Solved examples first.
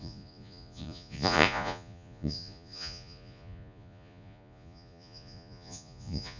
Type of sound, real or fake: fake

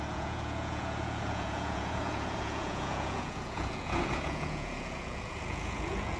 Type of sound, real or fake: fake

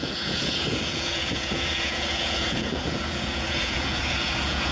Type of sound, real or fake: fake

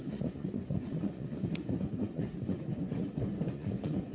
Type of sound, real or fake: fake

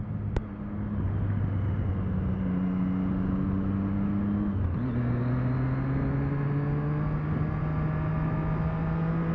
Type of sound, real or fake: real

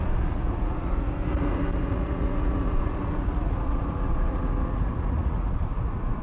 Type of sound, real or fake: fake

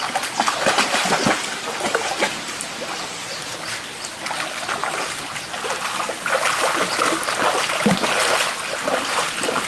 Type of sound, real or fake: real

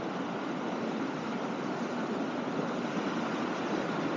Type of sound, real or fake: real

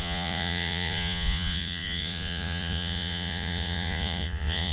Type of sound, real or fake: fake